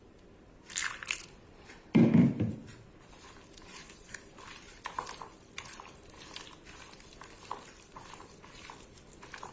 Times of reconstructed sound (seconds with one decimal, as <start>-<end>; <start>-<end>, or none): 0.0-9.5